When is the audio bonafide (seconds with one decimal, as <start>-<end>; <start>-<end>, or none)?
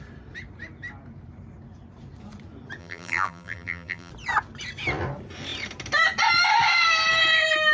0.0-2.8; 4.1-7.7